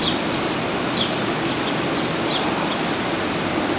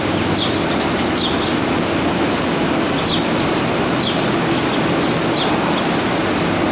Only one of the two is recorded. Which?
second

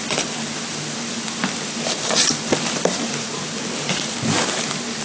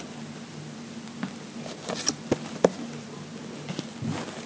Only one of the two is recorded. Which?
second